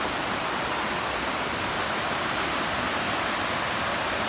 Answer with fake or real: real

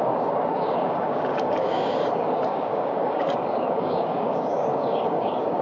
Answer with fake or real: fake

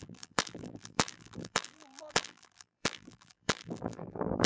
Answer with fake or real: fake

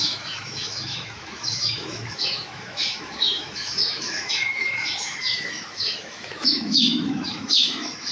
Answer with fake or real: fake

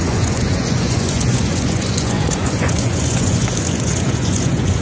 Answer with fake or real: fake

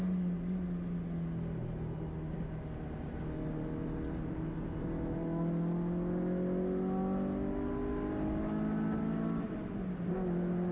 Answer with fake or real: real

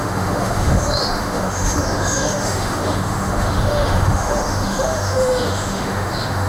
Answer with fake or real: fake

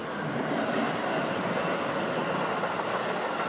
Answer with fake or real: real